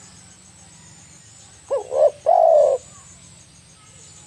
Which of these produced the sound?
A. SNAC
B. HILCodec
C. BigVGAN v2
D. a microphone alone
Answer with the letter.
D